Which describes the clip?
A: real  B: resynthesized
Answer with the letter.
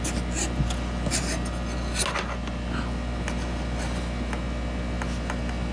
A